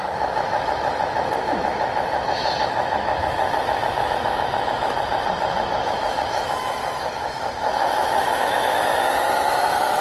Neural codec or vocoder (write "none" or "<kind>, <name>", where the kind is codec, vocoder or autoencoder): autoencoder, DAC-VAE